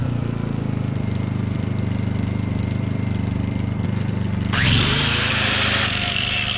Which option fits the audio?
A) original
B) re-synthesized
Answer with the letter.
B